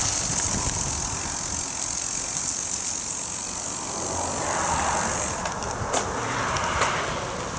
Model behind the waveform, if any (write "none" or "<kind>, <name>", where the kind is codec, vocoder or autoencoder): none